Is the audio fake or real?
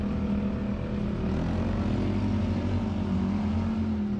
real